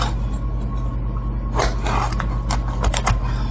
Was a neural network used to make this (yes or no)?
no